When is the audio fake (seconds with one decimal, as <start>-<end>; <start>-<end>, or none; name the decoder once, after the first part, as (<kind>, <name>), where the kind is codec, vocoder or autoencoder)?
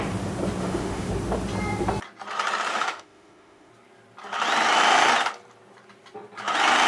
0.6-1.1 (autoencoder, DAC-VAE); 2.7-3.7